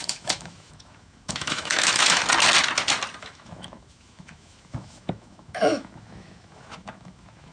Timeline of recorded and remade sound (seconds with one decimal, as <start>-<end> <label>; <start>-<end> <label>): 0.0-2.2 remade; 2.2-3.2 recorded; 3.2-7.5 remade